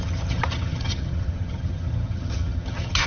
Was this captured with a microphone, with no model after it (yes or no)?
no